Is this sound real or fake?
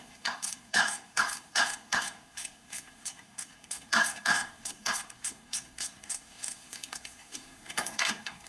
fake